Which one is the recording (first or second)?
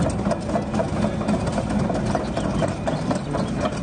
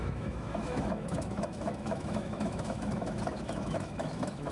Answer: first